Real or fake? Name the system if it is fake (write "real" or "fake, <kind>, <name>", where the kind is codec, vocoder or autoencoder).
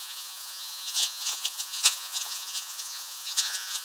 fake, vocoder, Vocos